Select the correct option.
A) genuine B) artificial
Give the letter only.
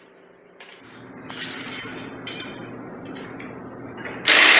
A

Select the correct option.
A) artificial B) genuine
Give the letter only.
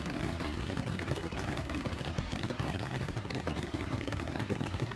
A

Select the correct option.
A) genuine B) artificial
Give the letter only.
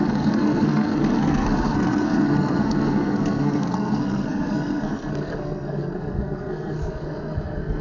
B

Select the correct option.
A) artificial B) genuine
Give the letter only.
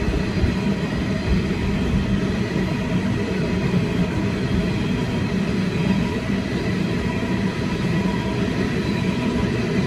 B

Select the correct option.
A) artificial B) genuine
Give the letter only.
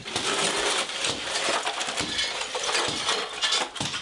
B